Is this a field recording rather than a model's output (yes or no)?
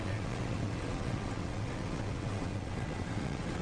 no